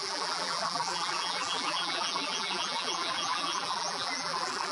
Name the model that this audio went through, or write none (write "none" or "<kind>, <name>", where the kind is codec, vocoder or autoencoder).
vocoder, BigVGAN v2